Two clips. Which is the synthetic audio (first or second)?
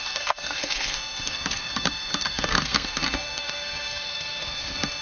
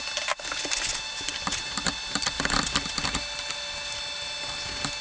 first